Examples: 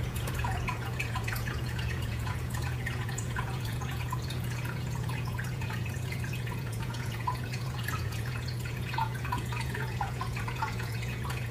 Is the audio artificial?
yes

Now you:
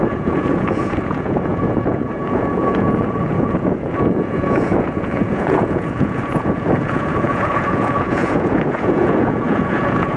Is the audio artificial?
yes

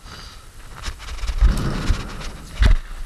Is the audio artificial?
no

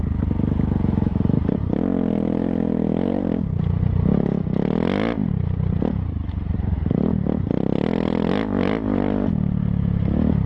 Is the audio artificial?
no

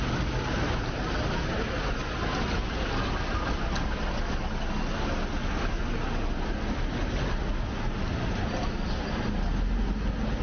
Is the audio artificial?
no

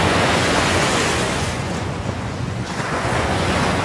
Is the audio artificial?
yes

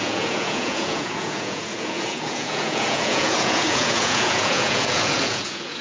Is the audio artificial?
yes